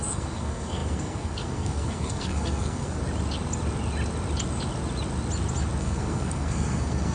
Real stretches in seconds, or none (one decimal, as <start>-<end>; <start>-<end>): 3.0-5.8